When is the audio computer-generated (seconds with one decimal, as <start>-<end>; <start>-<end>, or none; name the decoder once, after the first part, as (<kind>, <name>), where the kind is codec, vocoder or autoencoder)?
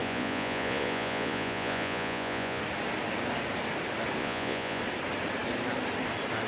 0.0-2.6 (vocoder, Vocos); 4.2-4.8